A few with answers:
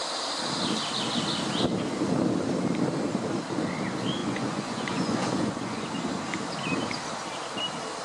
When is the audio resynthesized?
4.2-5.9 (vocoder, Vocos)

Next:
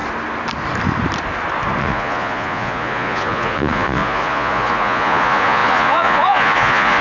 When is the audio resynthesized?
1.8-7.0 (vocoder, Vocos)

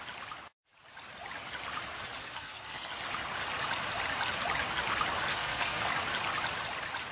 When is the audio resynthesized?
2.2-2.9 (codec, SNAC); 5.3-5.9

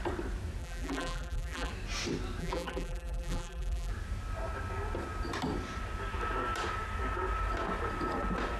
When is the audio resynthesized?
0.6-1.7 (vocoder, BigVGAN v2); 2.4-3.9